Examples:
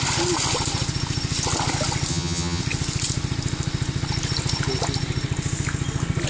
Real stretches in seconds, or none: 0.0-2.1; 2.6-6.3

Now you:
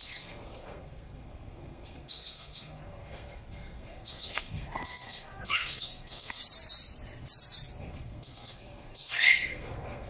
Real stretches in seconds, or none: 6.4-7.8